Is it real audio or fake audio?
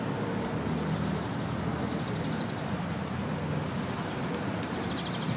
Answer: real